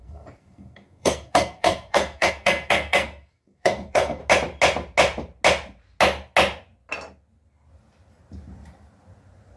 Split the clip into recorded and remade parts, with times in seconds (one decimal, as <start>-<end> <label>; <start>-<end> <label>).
0.0-4.2 remade; 4.2-9.6 recorded